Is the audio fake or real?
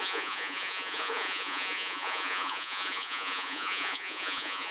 fake